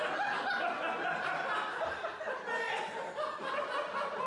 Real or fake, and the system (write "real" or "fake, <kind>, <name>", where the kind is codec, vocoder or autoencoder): real